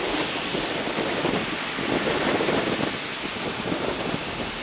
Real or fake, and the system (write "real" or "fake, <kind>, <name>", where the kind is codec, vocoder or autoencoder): real